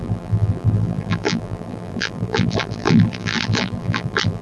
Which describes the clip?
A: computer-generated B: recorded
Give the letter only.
A